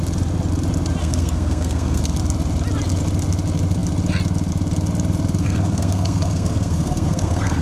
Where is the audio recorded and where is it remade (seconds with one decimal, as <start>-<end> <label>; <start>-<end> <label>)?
0.0-1.0 recorded; 1.0-2.0 remade; 2.0-5.4 recorded; 5.4-7.6 remade